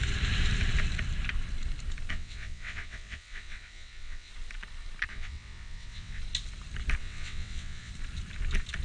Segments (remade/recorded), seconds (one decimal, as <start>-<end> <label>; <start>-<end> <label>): 0.0-2.1 recorded; 2.1-4.3 remade; 4.3-5.1 recorded; 5.1-6.2 remade; 6.2-7.0 recorded; 7.0-7.9 remade; 7.9-8.8 recorded